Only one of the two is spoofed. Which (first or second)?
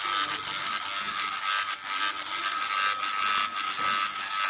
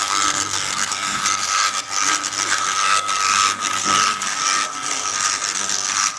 second